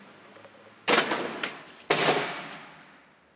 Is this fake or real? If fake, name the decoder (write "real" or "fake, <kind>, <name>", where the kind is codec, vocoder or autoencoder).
real